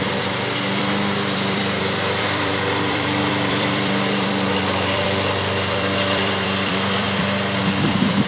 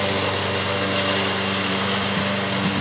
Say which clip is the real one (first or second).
second